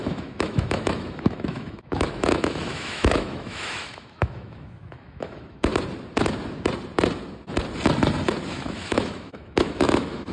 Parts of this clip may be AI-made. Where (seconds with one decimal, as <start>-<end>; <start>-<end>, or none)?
0.0-5.7; 8.5-10.3